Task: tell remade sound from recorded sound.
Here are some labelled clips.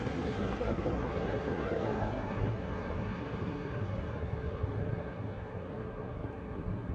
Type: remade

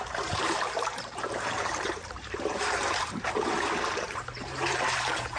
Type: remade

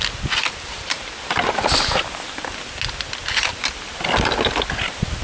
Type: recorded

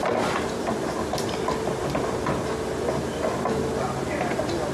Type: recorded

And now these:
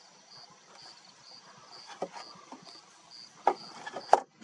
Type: recorded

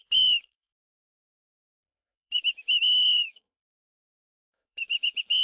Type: remade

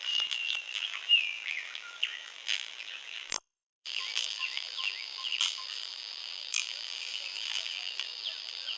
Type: remade